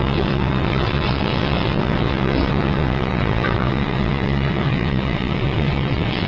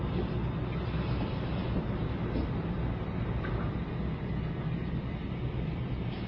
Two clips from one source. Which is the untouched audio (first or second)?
second